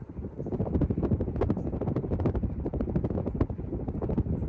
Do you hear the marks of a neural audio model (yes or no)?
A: no